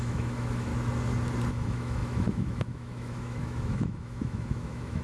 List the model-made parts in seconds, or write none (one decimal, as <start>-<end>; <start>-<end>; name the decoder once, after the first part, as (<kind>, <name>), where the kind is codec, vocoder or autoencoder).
0.0-0.7 (autoencoder, DAC-VAE); 1.5-5.0